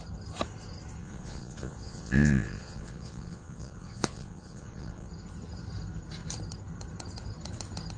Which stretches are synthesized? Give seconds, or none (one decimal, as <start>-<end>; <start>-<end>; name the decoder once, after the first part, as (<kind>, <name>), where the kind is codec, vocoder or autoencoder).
1.0-5.1 (vocoder, Vocos)